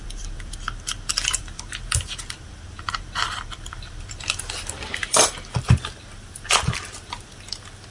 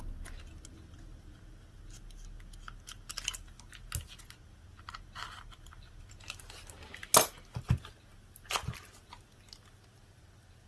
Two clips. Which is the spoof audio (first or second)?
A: first